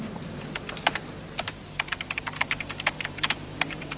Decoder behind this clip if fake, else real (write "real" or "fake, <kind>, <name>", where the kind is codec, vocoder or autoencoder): fake, vocoder, BigVGAN v2